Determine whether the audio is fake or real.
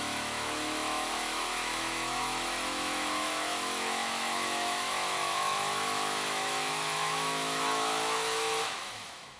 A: fake